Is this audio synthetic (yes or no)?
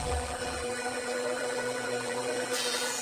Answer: yes